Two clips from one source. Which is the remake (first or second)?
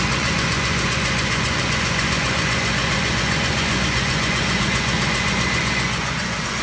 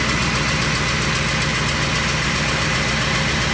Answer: first